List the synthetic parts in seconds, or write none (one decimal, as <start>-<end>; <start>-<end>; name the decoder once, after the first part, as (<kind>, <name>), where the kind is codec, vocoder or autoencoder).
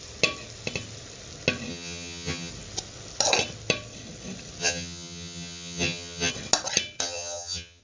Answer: 1.7-2.5 (vocoder, HiFi-GAN); 4.6-6.3; 7.0-7.8